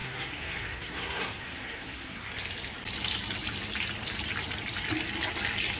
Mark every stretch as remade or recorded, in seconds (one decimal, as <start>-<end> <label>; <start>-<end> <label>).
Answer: 0.0-2.3 remade; 2.3-5.8 recorded

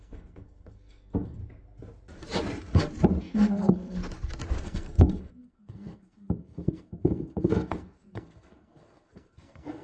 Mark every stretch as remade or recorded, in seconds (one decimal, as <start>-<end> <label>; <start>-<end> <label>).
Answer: 0.0-1.4 remade; 1.4-3.2 recorded; 3.2-4.0 remade; 4.0-4.6 recorded; 4.6-9.8 remade

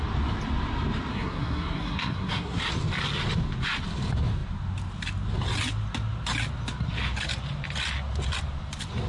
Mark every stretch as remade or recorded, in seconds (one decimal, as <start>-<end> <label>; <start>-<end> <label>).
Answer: 0.0-1.1 recorded; 1.1-2.6 remade; 2.6-9.1 recorded

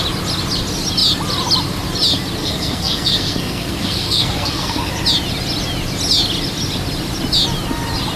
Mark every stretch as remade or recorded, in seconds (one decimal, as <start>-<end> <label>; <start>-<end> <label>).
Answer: 0.0-2.4 recorded; 2.4-4.9 remade; 4.9-8.2 recorded

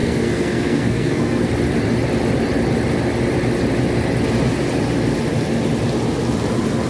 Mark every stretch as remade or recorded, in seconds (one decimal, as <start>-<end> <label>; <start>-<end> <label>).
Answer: 0.0-1.5 remade; 1.5-6.9 recorded

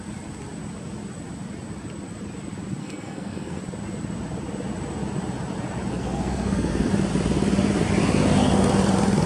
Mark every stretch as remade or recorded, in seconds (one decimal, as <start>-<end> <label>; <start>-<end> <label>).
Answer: 0.0-2.8 recorded; 2.8-3.6 remade; 3.6-5.9 recorded; 5.9-6.9 remade; 6.9-9.3 recorded

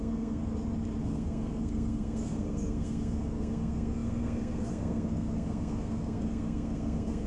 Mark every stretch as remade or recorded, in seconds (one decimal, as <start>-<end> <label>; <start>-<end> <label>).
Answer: 0.0-0.4 remade; 0.4-1.0 recorded; 1.0-7.3 remade